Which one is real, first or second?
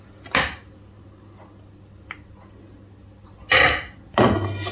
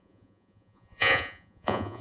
first